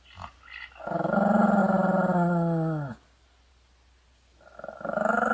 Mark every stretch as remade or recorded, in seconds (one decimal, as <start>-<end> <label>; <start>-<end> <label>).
0.0-5.3 recorded